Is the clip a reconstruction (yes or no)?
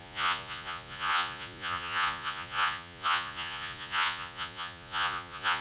yes